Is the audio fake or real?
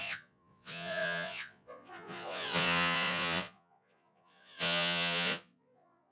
fake